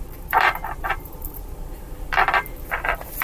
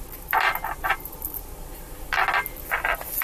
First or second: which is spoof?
first